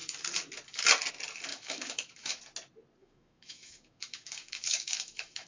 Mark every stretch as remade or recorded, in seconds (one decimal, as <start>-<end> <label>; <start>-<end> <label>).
0.0-1.5 recorded; 1.5-2.4 remade; 2.4-3.0 recorded; 3.0-5.5 remade